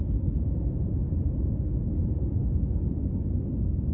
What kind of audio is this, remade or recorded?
recorded